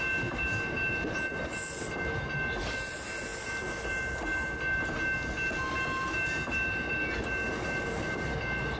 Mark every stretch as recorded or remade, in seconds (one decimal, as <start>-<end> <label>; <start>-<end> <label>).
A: 0.0-8.8 recorded